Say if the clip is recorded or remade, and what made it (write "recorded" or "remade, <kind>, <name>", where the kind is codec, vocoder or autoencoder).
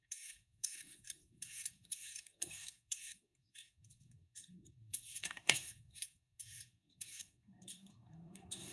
remade, codec, SNAC